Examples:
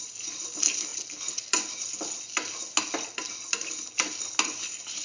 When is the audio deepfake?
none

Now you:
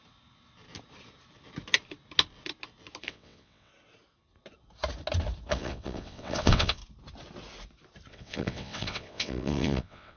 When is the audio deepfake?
3.0-3.7 (vocoder, WaveNeXt); 5.5-6.8; 8.1-10.2

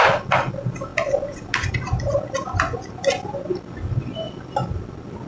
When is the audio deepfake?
none

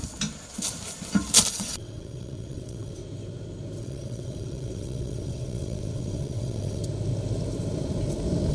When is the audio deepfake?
1.5-3.0 (vocoder, WaveNeXt); 3.8-6.8

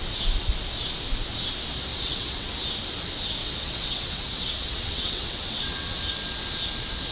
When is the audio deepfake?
1.9-2.5 (vocoder, WaveNeXt); 3.4-6.0

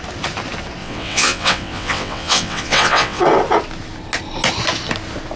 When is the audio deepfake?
0.8-3.2 (vocoder, WaveNeXt)

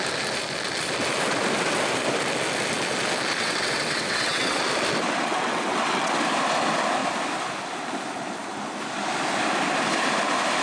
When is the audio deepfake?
3.4-4.6 (vocoder, WaveNeXt); 5.3-6.1